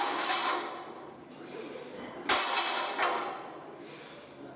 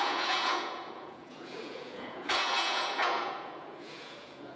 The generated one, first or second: second